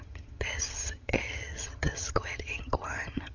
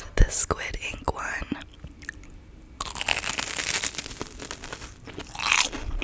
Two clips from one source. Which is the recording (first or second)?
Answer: second